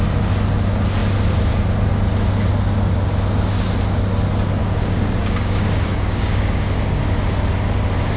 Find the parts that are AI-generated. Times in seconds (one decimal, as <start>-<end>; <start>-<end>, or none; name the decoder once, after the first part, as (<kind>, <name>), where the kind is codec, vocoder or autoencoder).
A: 4.6-7.0 (codec, DAC)